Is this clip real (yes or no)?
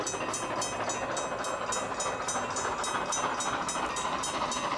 yes